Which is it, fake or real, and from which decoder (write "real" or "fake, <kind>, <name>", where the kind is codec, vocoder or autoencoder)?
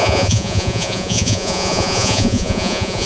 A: fake, vocoder, Vocos